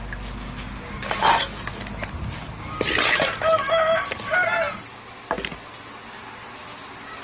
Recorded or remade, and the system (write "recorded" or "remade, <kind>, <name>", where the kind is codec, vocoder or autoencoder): recorded